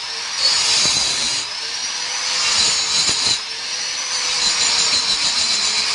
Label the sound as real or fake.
fake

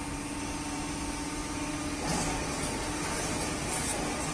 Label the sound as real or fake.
real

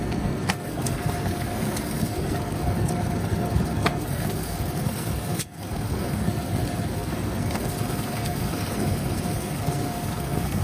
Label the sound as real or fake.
fake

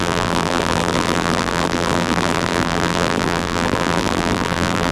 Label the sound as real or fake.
fake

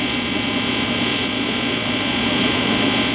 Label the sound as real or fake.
fake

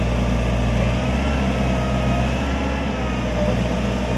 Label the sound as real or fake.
real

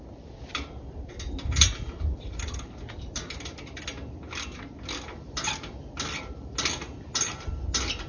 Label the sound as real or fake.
real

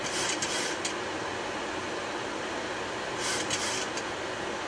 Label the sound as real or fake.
real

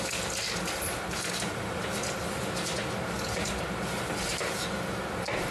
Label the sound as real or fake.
real